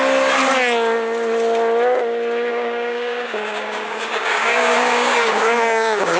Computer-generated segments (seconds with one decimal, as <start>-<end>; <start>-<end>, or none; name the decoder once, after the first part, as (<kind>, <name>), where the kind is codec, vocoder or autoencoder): 2.5-6.2 (codec, DAC)

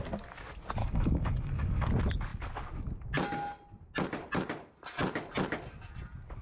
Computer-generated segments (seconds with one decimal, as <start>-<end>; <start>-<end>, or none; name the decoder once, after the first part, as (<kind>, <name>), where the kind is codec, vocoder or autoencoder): 0.8-1.9 (codec, DAC)

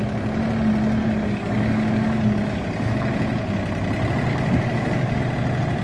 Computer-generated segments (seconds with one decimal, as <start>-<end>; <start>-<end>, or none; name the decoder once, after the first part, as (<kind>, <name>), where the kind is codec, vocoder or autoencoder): 1.0-2.9 (codec, DAC); 4.3-5.2

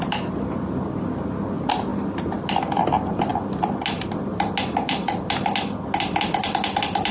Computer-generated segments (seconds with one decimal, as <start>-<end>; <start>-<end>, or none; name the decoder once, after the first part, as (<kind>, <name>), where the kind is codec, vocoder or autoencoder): none

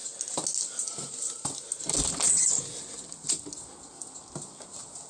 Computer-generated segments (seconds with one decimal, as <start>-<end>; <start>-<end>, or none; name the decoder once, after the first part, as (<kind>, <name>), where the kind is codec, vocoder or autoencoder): none

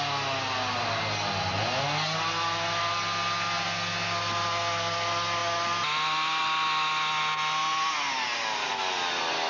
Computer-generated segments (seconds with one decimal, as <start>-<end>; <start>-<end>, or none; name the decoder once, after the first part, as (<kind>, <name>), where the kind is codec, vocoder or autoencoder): none